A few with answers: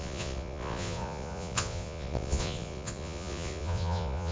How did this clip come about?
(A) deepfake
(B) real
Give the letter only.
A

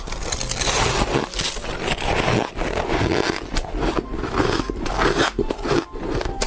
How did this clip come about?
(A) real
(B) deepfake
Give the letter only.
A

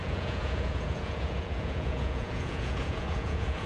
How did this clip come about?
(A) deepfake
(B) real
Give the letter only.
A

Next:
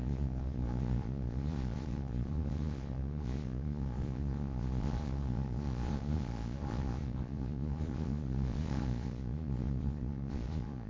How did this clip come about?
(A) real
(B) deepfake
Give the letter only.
B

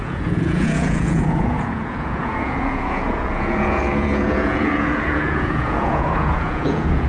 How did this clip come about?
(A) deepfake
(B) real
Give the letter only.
A